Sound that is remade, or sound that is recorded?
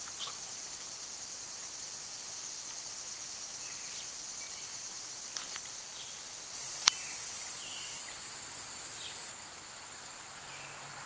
recorded